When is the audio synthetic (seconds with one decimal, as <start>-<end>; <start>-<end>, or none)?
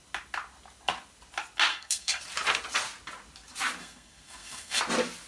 1.7-2.2; 3.8-4.8